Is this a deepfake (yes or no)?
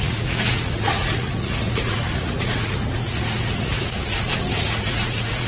yes